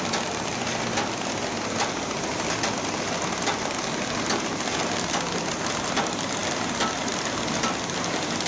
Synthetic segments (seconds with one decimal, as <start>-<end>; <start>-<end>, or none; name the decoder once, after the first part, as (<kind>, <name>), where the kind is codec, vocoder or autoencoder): none